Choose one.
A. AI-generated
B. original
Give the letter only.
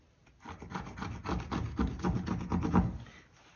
B